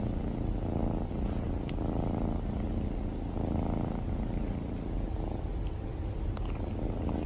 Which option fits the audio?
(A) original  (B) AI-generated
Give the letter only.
A